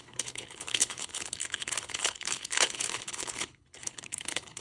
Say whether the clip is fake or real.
fake